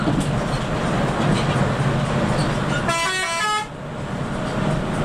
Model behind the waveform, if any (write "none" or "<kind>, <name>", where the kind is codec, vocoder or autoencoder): none